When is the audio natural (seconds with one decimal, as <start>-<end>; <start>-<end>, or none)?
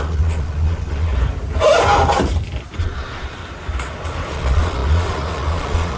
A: 1.1-2.8; 3.4-4.3